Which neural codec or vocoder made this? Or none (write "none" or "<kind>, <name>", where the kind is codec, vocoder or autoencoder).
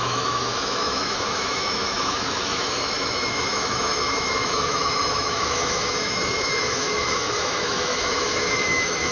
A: autoencoder, DAC-VAE